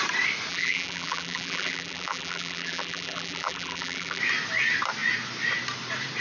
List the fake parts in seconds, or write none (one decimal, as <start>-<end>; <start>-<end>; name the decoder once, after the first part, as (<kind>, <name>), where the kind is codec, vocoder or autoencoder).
0.5-4.2 (vocoder, BigVGAN v2)